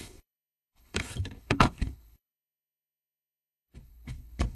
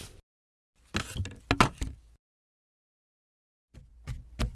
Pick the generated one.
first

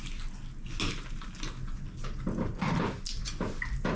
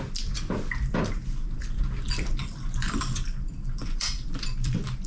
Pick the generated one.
second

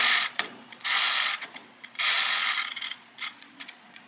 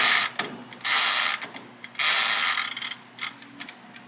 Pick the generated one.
first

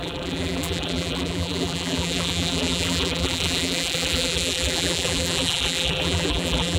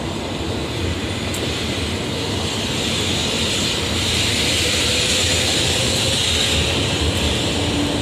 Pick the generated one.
first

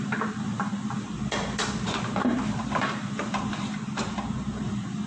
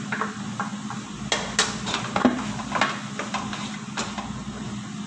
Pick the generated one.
first